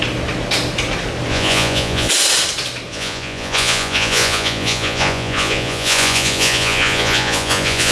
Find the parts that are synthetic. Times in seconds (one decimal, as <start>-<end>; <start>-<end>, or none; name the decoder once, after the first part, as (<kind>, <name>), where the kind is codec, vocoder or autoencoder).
1.3-2.1 (vocoder, Vocos); 2.9-7.9